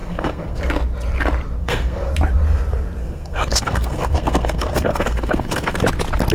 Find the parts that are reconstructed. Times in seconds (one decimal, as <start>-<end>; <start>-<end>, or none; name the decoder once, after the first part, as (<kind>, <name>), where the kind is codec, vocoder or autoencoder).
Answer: 0.0-0.6 (codec, SNAC); 1.6-2.1; 3.0-5.8